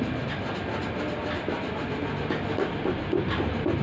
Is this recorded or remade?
recorded